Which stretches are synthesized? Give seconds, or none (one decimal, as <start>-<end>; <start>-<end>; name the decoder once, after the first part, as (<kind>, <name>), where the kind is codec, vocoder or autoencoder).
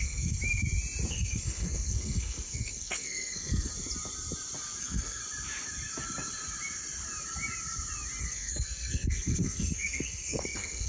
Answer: 0.0-0.4 (codec, SNAC); 1.1-3.7; 4.8-5.2; 8.2-10.9